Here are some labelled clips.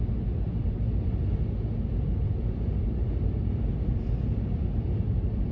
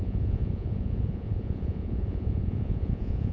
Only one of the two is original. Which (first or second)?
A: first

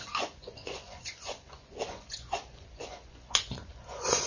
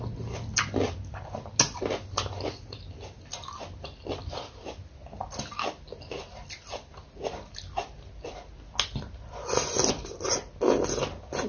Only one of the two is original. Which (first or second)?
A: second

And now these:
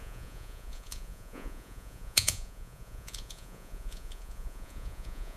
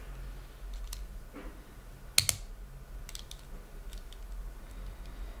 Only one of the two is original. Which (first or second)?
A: second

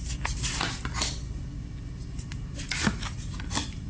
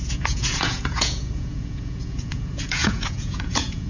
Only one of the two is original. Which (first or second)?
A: first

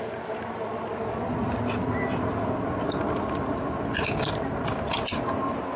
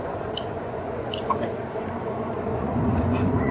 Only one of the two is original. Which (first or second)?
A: first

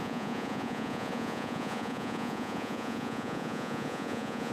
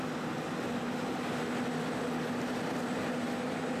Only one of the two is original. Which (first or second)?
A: second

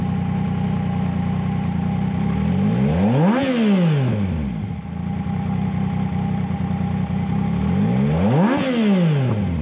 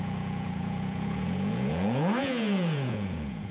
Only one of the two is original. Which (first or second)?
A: first